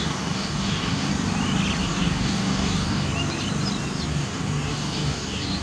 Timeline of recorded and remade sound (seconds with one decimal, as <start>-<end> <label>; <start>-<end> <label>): 0.0-1.1 remade; 1.1-1.8 recorded; 1.8-3.1 remade; 3.1-4.1 recorded; 4.1-5.6 remade